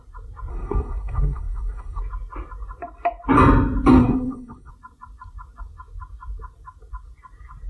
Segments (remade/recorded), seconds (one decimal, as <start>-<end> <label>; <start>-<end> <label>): 0.0-0.5 recorded; 0.5-2.0 remade; 2.0-4.0 recorded; 4.0-4.7 remade; 4.7-7.7 recorded